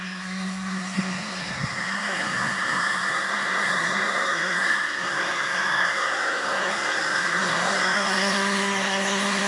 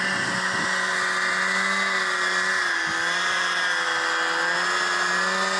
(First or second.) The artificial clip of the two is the first